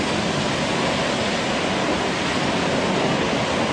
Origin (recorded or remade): recorded